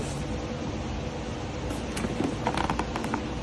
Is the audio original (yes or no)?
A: yes